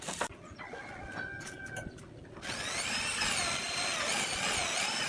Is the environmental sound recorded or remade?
recorded